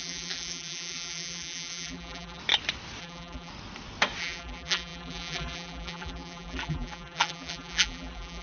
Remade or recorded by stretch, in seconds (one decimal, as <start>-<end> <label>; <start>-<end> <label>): 0.0-2.4 remade; 2.4-3.0 recorded; 3.0-3.5 remade; 3.5-4.2 recorded; 4.2-8.4 remade